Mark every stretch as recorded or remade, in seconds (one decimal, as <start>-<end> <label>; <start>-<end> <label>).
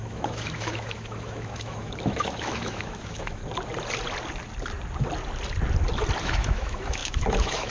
0.0-3.4 remade; 3.4-6.2 recorded; 6.2-7.7 remade